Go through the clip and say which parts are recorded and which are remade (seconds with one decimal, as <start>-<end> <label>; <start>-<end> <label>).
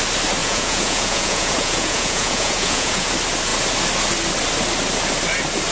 0.0-0.4 recorded; 0.4-3.1 remade; 3.1-5.7 recorded